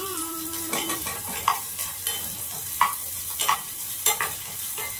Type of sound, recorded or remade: remade